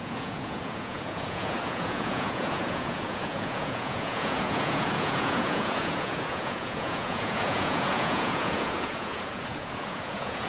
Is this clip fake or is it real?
fake